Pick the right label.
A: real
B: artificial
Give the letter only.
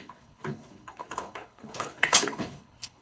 B